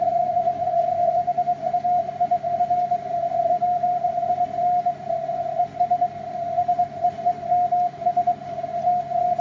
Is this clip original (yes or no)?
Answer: yes